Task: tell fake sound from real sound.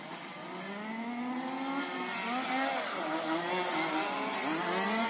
real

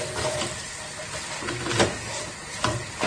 real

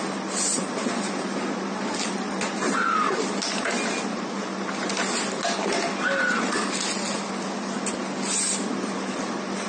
real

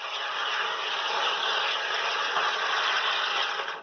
real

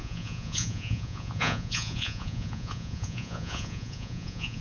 fake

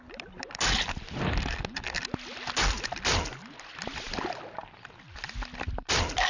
real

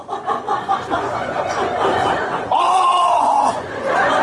fake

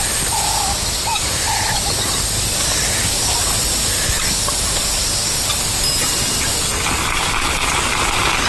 real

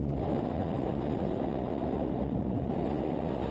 fake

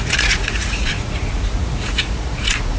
fake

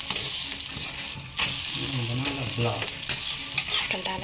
real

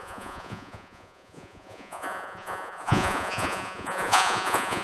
fake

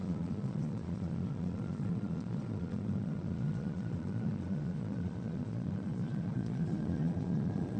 fake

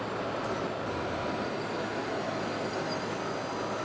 real